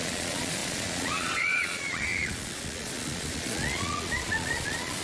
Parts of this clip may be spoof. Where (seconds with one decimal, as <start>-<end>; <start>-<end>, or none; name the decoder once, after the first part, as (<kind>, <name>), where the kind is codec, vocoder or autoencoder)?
0.0-5.0 (vocoder, Vocos)

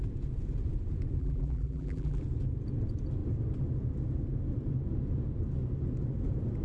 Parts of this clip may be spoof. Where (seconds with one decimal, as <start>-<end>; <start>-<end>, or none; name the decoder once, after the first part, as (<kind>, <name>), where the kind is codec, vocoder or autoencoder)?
1.2-2.2 (vocoder, BigVGAN v2)

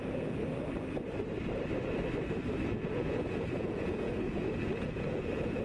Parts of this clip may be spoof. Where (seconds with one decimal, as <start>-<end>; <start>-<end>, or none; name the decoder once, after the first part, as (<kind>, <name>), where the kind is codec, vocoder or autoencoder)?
0.0-0.4 (vocoder, Vocos); 2.5-5.6

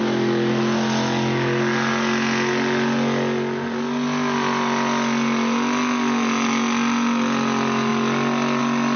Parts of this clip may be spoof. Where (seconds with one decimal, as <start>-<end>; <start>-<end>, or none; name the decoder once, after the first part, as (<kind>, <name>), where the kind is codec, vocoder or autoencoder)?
none

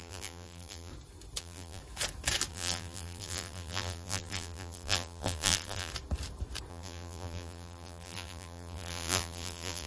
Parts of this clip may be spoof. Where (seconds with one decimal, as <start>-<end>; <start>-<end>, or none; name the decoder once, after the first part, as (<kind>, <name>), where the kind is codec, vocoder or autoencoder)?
0.0-0.9 (vocoder, BigVGAN v2); 1.4-1.8; 2.5-5.9; 6.7-9.9

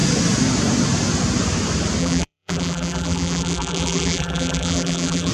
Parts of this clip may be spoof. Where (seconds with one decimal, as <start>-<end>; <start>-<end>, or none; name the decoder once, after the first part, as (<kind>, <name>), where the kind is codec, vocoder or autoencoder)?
2.0-5.3 (vocoder, BigVGAN v2)

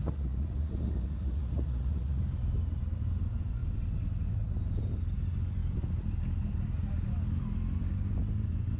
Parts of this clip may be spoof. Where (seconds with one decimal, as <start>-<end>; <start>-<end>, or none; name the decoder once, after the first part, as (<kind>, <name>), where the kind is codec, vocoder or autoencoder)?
0.0-2.2 (vocoder, Vocos)